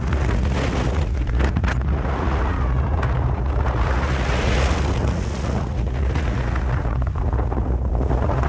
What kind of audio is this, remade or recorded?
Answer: remade